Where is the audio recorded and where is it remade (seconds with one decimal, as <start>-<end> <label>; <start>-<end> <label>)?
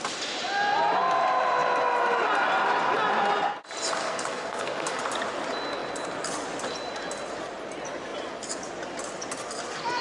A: 0.0-4.0 recorded; 4.0-5.0 remade; 5.0-10.0 recorded